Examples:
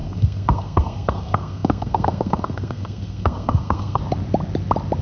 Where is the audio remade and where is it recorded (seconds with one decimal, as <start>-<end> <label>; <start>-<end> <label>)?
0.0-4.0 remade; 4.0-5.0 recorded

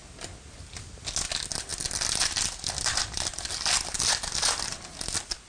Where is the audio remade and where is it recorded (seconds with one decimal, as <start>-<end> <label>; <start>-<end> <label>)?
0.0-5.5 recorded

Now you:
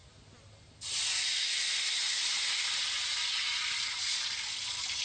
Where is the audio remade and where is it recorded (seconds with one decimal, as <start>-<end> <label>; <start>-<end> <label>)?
0.0-5.0 recorded